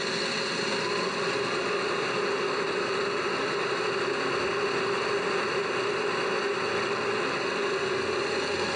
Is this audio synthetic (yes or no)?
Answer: no